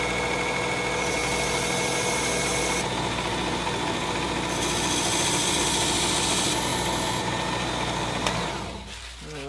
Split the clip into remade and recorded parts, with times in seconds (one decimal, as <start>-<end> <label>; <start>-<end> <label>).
0.0-9.5 recorded